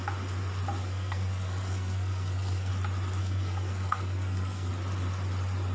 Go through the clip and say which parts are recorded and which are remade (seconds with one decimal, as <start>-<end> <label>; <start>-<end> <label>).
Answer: 0.0-0.8 recorded; 0.8-2.7 remade; 2.7-3.2 recorded; 3.2-4.7 remade; 4.7-5.7 recorded